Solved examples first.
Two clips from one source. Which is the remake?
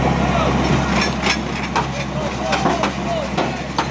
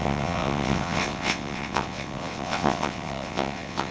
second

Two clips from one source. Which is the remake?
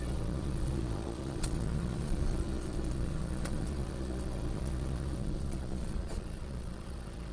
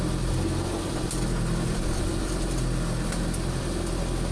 first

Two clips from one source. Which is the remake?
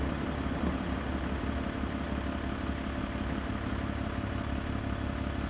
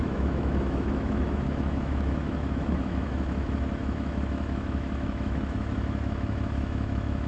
second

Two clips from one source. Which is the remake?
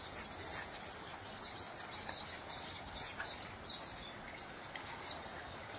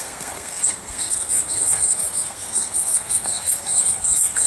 second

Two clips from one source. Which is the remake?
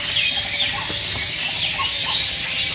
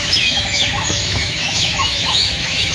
second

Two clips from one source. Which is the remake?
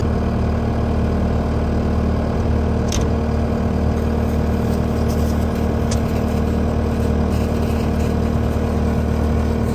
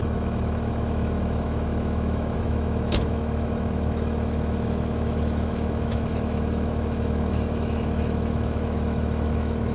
second